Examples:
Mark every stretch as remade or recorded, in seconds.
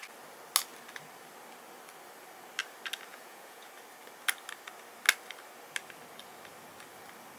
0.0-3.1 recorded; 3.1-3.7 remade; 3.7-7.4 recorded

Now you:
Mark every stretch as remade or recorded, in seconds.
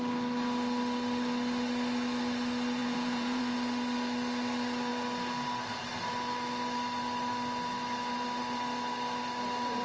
0.0-2.8 recorded; 2.8-3.4 remade; 3.4-9.8 recorded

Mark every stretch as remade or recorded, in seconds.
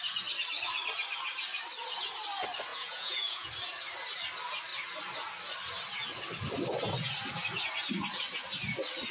0.0-2.7 recorded; 2.7-3.5 remade; 3.5-9.1 recorded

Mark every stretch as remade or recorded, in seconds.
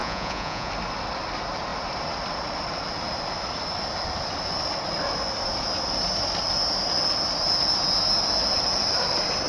0.0-0.7 remade; 0.7-9.5 recorded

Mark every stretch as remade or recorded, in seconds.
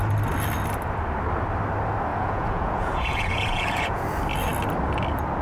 0.0-2.1 recorded; 2.1-4.0 remade; 4.0-5.4 recorded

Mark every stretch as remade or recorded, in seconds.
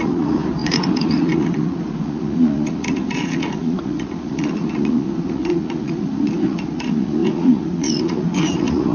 0.0-8.9 remade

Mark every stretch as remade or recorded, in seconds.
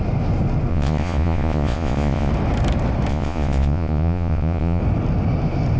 0.0-0.7 recorded; 0.7-2.3 remade; 2.3-3.1 recorded; 3.1-4.8 remade; 4.8-5.8 recorded